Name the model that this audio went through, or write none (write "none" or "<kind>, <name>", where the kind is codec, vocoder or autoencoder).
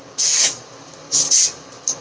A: none